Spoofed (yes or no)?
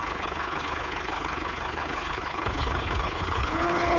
yes